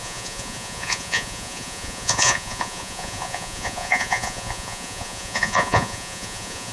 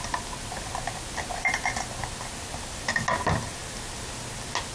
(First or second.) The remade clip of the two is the first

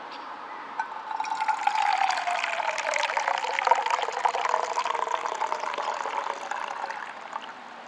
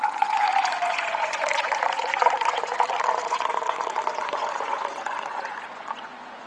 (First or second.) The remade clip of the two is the second